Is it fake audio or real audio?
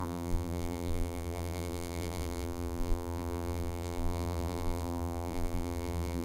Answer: fake